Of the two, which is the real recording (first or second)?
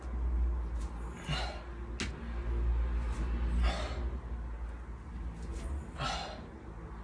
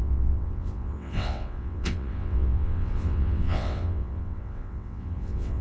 first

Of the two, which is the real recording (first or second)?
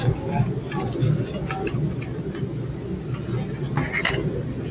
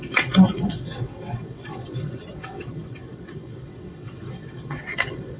first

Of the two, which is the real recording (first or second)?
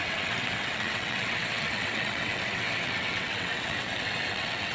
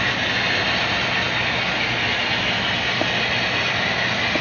second